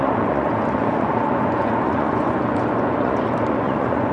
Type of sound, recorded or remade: remade